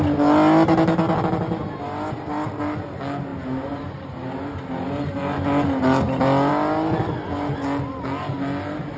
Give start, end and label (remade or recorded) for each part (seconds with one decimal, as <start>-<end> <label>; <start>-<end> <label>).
0.0-9.0 recorded

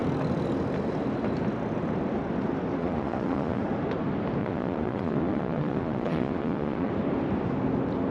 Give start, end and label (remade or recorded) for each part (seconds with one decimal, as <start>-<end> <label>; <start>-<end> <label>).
0.0-2.8 recorded; 2.8-3.6 remade; 3.6-4.4 recorded; 4.4-6.9 remade; 6.9-8.1 recorded

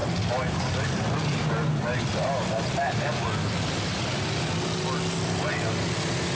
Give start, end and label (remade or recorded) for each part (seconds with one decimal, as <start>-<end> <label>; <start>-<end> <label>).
0.0-6.4 recorded

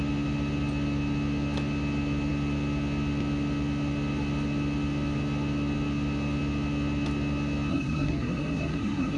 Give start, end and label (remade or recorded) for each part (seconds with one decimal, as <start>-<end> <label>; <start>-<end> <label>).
0.0-7.7 recorded; 7.7-9.2 remade

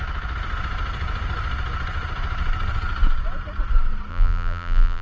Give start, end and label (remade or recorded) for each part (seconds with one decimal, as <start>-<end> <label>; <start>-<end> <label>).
0.0-4.1 recorded; 4.1-5.0 remade

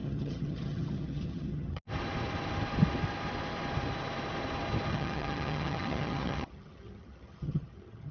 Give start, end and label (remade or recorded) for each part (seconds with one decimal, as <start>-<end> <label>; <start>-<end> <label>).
0.0-1.8 remade; 1.8-4.9 recorded; 4.9-8.1 remade